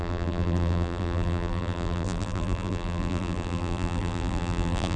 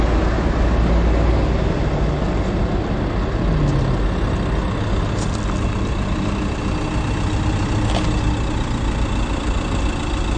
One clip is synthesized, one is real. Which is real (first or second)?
second